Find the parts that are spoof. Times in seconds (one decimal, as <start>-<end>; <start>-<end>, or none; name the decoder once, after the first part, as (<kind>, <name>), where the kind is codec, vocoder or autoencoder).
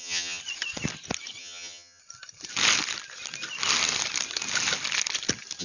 0.0-0.4 (vocoder, HiFi-GAN); 1.4-2.0